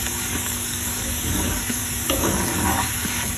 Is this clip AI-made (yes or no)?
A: yes